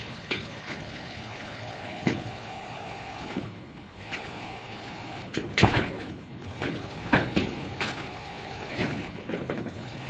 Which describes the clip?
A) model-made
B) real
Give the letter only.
A